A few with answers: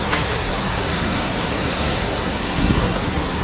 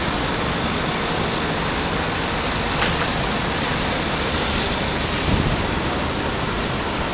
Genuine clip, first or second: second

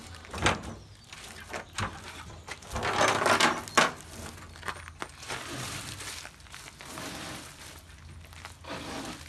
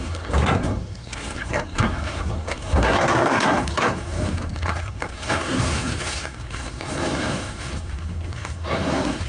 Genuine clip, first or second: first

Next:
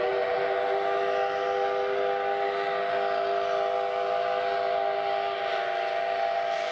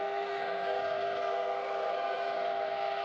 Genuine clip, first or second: first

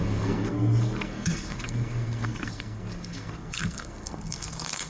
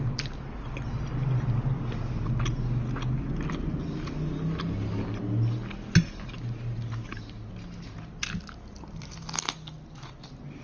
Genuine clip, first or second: second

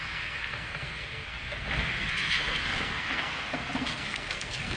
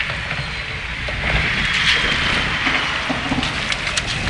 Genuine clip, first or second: second